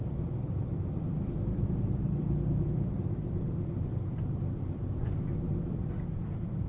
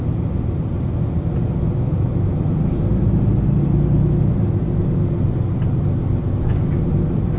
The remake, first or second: first